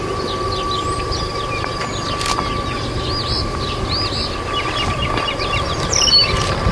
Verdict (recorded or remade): recorded